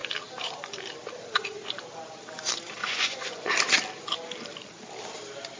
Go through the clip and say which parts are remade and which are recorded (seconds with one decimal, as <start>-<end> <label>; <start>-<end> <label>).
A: 0.0-2.8 recorded; 2.8-3.5 remade; 3.5-5.6 recorded